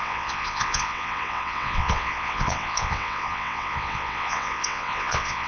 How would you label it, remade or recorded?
remade